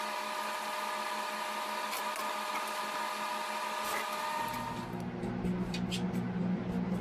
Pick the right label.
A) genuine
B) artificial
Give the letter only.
A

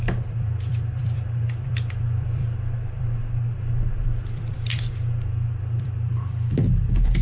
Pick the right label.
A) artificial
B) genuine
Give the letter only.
A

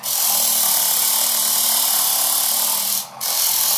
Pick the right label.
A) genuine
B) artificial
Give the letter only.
A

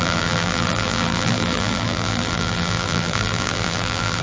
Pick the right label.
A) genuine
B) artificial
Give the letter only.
B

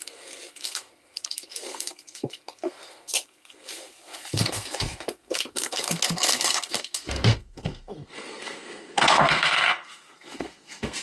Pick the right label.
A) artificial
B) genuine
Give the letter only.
A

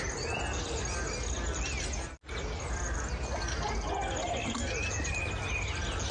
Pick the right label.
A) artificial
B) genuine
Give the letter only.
B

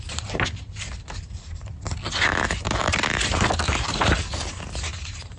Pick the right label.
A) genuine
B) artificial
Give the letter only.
A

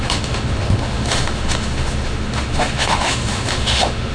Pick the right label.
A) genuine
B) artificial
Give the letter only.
B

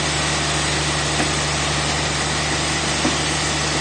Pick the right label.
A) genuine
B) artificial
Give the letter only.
A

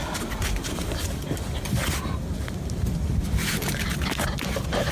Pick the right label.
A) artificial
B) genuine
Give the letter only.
B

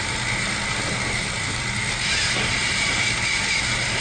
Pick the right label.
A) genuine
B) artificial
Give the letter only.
B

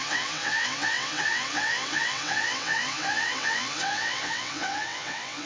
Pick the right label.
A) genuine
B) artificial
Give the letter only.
B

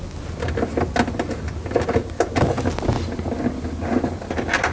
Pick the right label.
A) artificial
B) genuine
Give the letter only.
B